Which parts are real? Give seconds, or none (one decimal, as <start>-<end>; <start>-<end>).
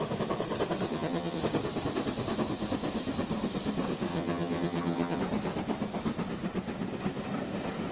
0.0-0.9; 1.4-4.1; 5.2-7.9